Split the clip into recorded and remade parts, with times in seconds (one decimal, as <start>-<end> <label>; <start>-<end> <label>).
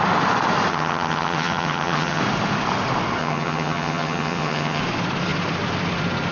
0.0-0.7 recorded; 0.7-2.2 remade; 2.2-3.2 recorded; 3.2-4.8 remade; 4.8-6.3 recorded